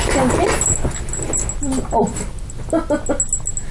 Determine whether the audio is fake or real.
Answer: real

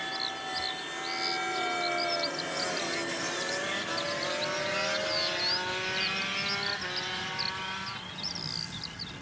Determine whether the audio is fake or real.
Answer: real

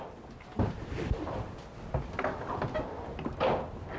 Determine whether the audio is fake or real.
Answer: real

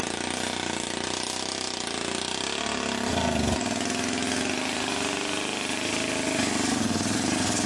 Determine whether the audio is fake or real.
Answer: real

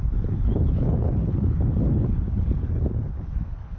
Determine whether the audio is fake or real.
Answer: fake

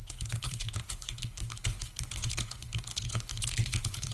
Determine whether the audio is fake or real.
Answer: fake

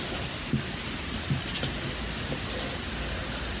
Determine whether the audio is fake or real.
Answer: real